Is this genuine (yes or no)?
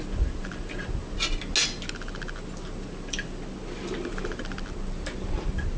yes